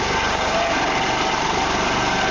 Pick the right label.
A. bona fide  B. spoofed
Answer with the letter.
A